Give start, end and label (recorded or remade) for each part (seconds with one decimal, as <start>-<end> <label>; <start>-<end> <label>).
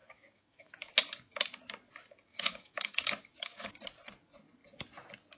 0.0-0.9 remade; 0.9-2.3 recorded; 2.3-3.8 remade; 3.8-5.4 recorded